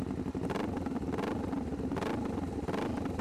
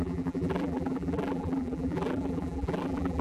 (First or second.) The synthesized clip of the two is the second